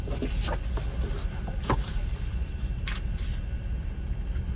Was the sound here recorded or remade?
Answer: recorded